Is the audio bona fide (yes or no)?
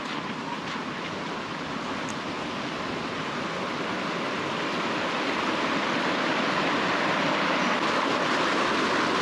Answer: yes